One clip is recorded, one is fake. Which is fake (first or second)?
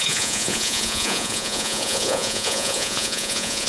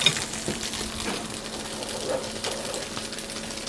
first